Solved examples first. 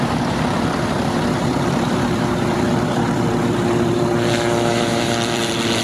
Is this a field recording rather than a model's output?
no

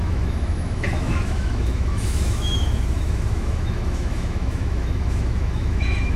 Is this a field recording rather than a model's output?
no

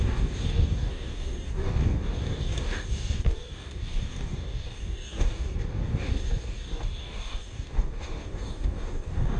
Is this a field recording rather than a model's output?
no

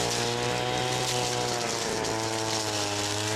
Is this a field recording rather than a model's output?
no